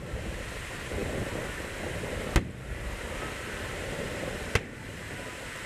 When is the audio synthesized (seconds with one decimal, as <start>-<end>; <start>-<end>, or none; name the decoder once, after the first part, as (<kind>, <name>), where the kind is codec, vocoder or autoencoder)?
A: none